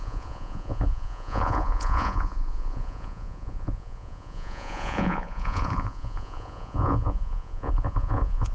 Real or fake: fake